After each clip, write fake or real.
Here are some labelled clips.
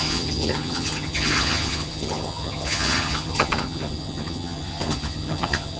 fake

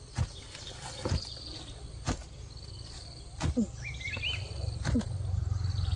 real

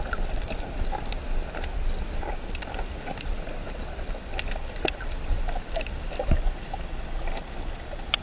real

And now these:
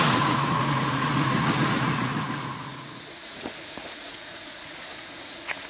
fake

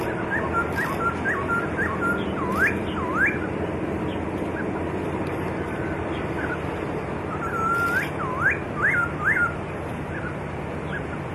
real